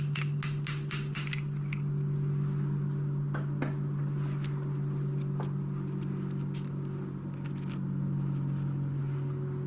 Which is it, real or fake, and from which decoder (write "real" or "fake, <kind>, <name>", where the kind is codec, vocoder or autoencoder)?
real